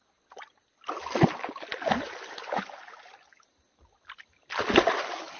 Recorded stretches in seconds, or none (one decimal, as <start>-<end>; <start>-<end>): 0.0-5.4

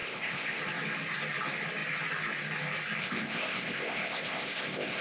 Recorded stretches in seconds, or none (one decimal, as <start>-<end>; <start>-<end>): 0.6-3.0

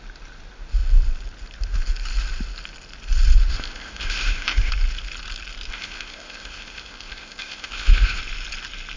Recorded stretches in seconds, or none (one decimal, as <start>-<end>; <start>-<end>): 0.0-3.5; 4.7-5.7; 8.2-9.0

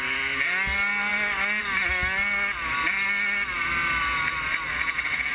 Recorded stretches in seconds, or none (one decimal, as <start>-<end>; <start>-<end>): 0.0-5.3

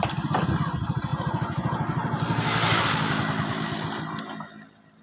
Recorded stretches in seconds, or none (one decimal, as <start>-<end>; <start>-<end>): 0.0-5.0

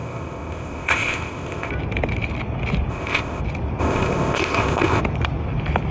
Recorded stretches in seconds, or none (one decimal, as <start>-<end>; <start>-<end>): 1.7-2.9; 3.4-3.8; 5.0-5.9